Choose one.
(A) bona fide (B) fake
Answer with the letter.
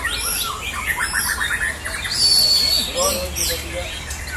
A